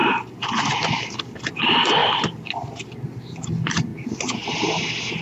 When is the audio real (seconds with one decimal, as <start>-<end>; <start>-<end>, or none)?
0.0-2.0; 3.0-3.9; 4.5-5.2